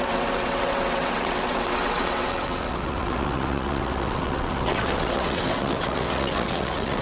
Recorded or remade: remade